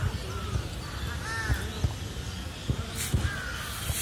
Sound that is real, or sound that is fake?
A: real